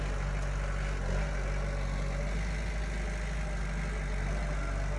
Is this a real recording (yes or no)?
yes